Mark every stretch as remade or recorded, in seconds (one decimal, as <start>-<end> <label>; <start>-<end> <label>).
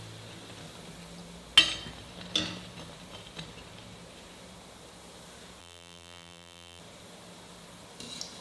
0.0-5.6 recorded; 5.6-6.8 remade; 6.8-8.4 recorded